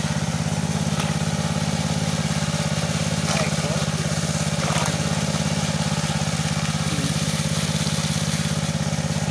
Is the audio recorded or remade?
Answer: recorded